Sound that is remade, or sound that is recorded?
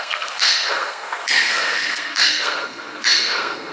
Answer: remade